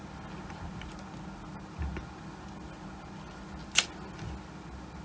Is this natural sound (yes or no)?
yes